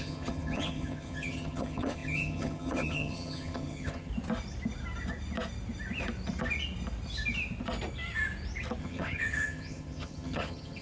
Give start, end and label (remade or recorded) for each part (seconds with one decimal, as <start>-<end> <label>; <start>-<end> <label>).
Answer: 0.0-4.1 remade; 4.1-8.8 recorded; 8.8-10.8 remade